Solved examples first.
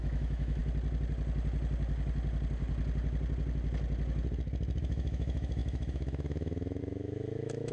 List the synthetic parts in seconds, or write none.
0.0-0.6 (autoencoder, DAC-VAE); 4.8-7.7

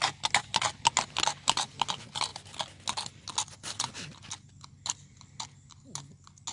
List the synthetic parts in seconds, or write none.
none

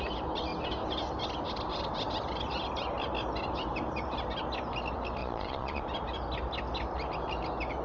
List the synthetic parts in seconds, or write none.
5.2-5.8 (vocoder, Vocos)

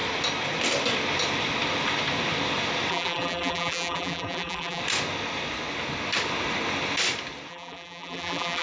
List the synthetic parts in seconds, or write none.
2.9-4.8 (vocoder, BigVGAN v2); 7.5-8.6